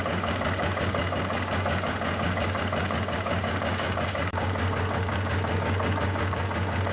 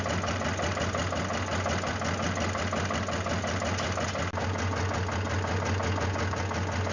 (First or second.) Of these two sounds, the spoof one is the first